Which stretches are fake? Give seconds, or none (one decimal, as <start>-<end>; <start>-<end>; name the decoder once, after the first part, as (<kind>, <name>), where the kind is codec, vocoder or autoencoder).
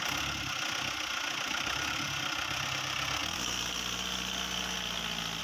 0.0-3.2 (vocoder, BigVGAN v2)